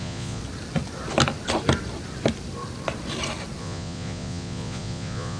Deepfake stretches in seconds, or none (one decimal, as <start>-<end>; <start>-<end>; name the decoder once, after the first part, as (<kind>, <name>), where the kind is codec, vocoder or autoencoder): 0.0-0.4 (vocoder, Vocos); 3.6-5.4